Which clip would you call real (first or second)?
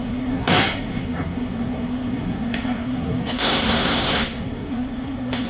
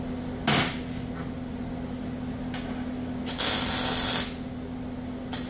second